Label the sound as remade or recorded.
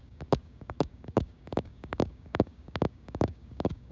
remade